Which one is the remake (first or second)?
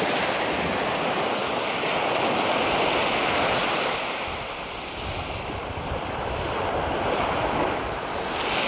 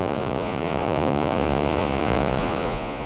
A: second